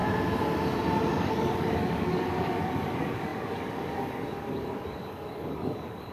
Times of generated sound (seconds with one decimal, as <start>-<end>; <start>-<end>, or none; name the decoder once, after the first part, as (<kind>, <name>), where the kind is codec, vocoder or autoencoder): 1.1-6.1 (codec, DAC)